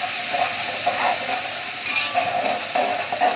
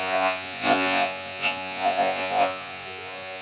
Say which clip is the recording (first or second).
first